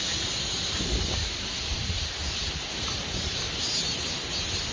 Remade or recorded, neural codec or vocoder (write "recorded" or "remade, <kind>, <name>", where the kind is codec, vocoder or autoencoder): recorded